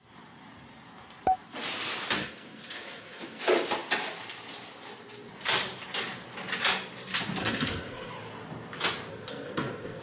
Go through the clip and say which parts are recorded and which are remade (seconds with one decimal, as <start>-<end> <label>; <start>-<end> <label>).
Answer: 0.0-2.2 recorded; 2.2-3.4 remade; 3.4-7.4 recorded; 7.4-8.1 remade; 8.1-9.1 recorded; 9.1-10.0 remade